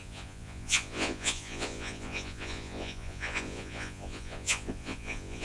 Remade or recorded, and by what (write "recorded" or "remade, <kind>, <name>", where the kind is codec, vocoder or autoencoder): remade, vocoder, Vocos